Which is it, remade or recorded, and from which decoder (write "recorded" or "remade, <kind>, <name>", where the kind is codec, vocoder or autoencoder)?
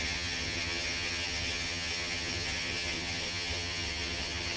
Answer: remade, vocoder, HiFi-GAN